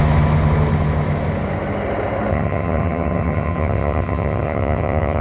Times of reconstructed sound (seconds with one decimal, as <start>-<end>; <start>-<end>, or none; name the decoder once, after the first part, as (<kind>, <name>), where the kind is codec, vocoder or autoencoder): 2.3-5.2 (vocoder, HiFi-GAN)